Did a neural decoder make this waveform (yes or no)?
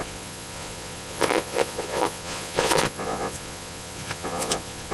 yes